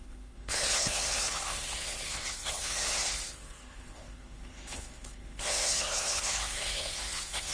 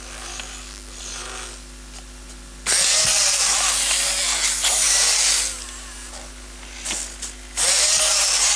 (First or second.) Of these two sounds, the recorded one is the second